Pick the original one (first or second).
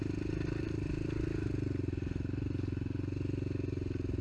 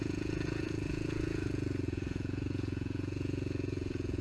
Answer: first